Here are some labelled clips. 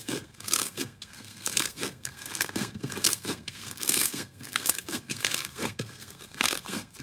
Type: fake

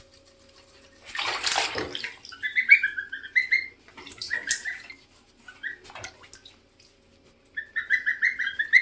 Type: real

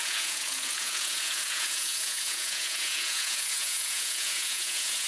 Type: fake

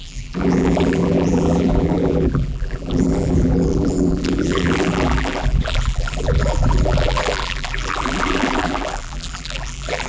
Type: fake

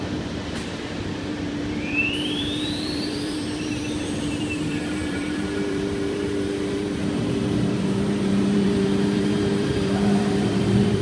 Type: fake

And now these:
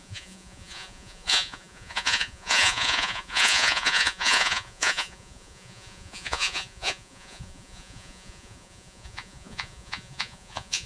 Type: fake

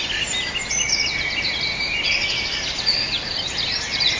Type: real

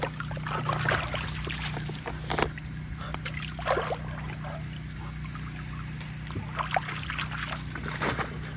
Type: real